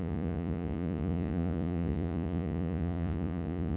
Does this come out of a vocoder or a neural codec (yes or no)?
yes